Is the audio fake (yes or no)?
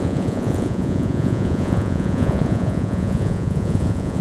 yes